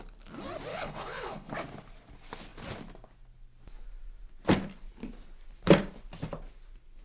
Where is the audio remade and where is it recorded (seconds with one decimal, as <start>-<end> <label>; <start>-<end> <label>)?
0.0-0.7 recorded; 0.7-1.5 remade; 1.5-7.0 recorded